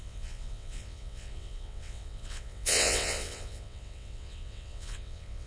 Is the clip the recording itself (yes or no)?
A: no